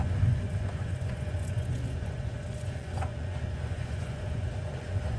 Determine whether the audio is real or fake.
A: fake